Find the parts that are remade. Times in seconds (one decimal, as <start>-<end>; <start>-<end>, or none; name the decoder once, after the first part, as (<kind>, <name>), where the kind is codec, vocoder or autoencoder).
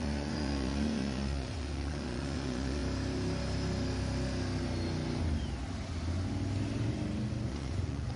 0.0-2.8 (vocoder, Vocos); 7.5-8.2